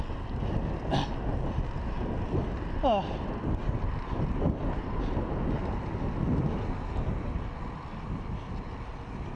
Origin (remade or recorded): recorded